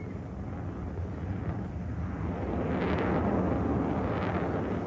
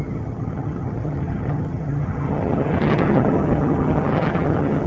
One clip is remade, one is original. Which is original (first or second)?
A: first